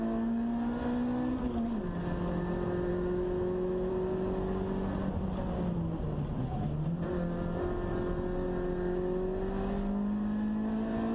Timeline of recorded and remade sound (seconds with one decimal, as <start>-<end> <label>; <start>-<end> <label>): 0.0-2.9 recorded; 2.9-3.9 remade; 3.9-11.1 recorded